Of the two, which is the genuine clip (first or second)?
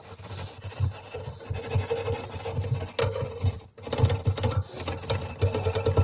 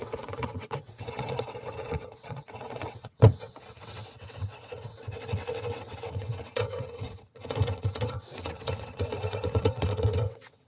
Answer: first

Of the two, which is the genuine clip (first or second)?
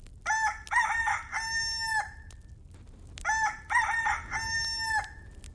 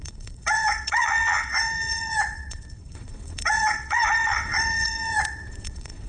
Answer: first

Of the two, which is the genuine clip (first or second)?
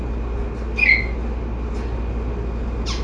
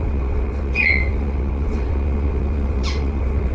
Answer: first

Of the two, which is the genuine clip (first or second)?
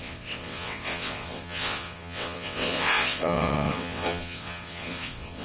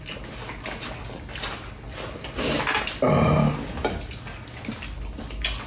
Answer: second